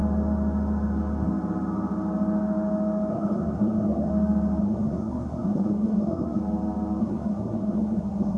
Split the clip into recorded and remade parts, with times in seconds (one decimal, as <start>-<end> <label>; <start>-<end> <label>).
0.0-3.1 recorded; 3.1-4.1 remade; 4.1-4.6 recorded; 4.6-6.4 remade; 6.4-7.0 recorded; 7.0-8.4 remade